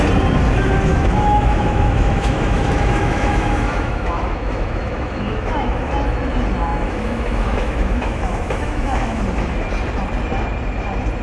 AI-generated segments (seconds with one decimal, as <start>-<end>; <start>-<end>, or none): 0.9-5.9; 6.7-9.2